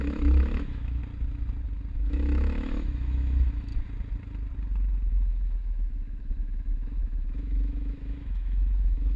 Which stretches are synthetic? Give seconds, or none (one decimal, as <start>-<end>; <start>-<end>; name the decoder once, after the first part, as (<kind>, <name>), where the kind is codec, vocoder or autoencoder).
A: 0.0-1.0 (autoencoder, DAC-VAE); 1.9-3.7; 5.1-9.2